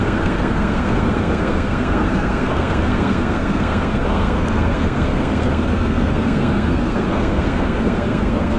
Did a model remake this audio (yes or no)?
yes